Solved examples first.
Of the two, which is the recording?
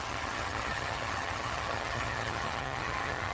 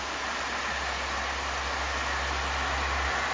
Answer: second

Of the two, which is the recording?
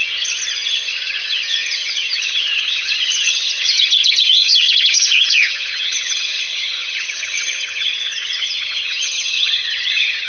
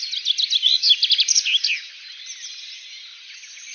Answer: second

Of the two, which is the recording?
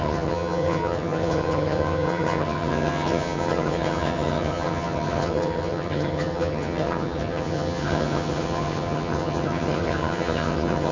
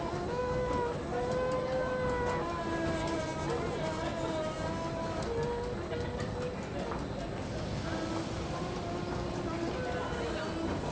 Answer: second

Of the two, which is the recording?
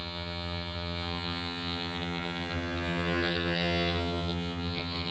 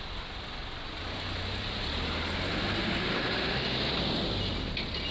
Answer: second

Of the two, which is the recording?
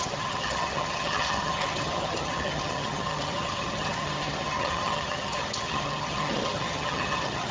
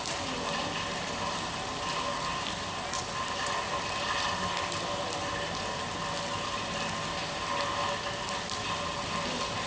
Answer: second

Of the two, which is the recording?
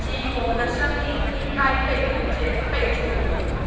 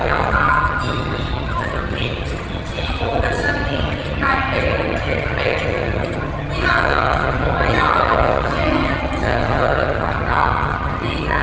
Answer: first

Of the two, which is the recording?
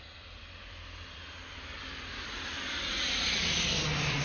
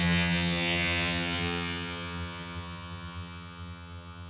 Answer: first